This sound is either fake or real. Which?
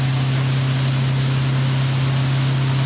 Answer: real